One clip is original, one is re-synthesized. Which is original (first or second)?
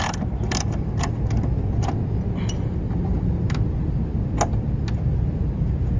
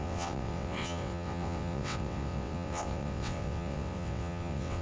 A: first